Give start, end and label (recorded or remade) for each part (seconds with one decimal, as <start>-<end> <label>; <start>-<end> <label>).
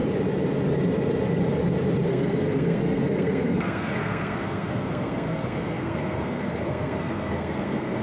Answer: 0.0-2.1 recorded; 2.1-8.0 remade